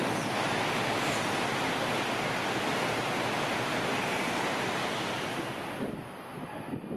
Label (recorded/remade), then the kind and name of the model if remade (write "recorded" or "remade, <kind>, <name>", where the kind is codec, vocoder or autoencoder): recorded